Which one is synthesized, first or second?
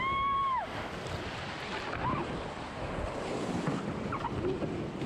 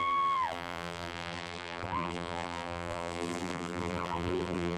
second